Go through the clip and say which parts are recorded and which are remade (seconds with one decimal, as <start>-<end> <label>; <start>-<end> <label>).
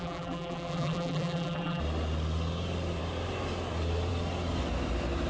0.0-1.8 remade; 1.8-5.3 recorded